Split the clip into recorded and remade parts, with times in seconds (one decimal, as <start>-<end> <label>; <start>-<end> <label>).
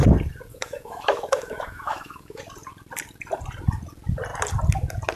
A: 0.0-0.5 recorded; 0.5-2.4 remade; 2.4-5.2 recorded